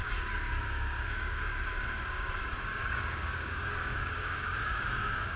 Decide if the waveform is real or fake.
fake